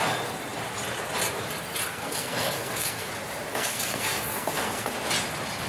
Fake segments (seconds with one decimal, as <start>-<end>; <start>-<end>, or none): 1.9-3.1; 3.5-4.9